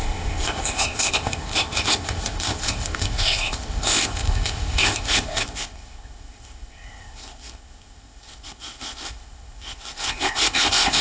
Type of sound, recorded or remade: remade